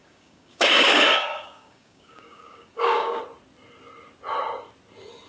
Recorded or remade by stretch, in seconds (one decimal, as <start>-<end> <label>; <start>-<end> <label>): 0.0-3.2 remade; 3.2-5.3 recorded